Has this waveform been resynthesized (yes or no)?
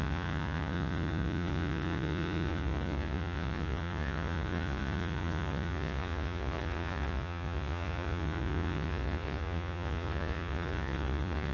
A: yes